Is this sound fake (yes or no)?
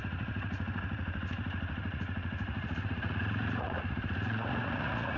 yes